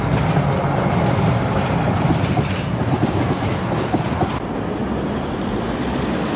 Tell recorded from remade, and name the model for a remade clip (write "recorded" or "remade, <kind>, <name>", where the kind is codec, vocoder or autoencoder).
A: recorded